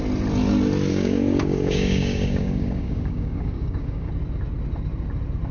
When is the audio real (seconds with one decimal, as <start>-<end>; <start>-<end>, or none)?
0.0-0.9; 4.1-5.5